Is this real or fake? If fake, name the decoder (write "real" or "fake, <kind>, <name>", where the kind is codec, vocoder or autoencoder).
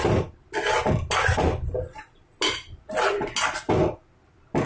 real